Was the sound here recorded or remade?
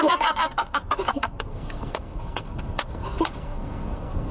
remade